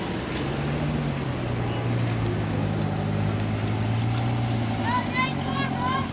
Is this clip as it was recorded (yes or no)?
yes